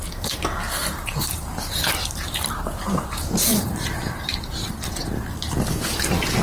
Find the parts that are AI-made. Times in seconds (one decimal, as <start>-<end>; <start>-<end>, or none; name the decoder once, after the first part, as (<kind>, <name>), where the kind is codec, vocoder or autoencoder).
0.8-4.6 (vocoder, BigVGAN v2)